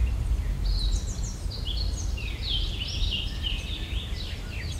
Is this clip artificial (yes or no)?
no